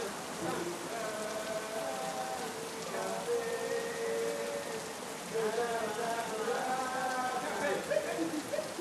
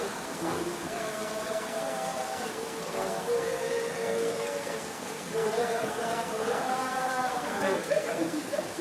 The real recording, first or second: first